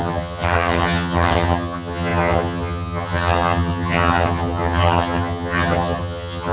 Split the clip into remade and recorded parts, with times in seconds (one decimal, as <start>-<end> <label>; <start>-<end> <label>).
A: 0.0-6.5 remade